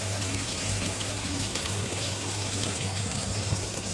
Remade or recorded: remade